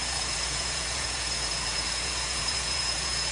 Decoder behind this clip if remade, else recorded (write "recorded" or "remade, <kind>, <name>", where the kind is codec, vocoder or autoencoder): remade, vocoder, Vocos